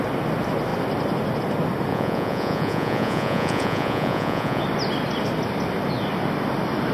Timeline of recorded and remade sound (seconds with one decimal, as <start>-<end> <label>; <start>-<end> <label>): 0.0-1.9 recorded; 1.9-4.6 remade; 4.6-6.9 recorded